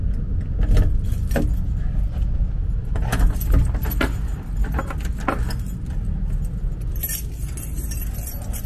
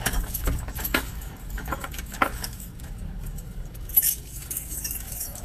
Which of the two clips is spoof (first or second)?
second